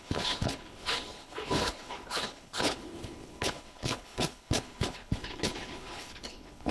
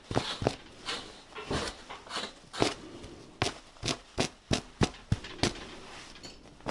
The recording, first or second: second